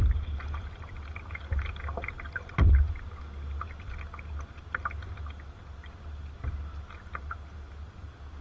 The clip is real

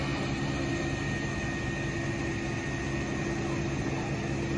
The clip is real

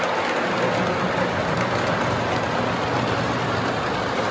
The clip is real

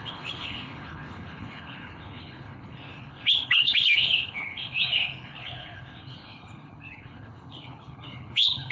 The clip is fake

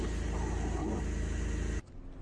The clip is real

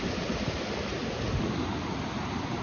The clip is real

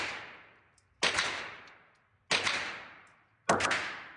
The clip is real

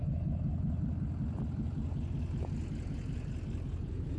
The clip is real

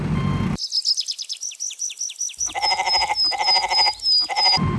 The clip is real